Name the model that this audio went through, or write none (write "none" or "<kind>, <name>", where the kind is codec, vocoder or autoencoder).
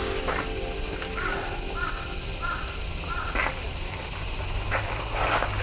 none